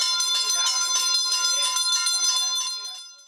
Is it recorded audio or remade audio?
recorded